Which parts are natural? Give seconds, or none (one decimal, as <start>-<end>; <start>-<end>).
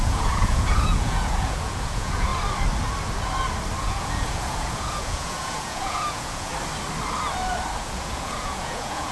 2.3-3.8; 6.5-7.8